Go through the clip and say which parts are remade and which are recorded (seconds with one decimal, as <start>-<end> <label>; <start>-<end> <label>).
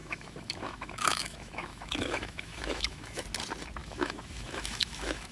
0.0-3.2 remade; 3.2-3.8 recorded; 3.8-5.3 remade